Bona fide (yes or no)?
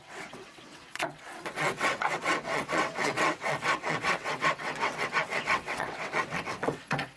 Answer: no